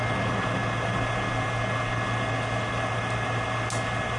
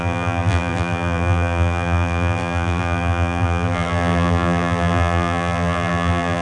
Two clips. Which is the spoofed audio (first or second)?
second